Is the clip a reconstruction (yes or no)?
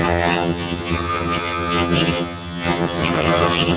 yes